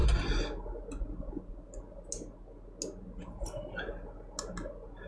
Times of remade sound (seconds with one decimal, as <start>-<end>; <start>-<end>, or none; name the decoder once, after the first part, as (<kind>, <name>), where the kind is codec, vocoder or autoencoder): none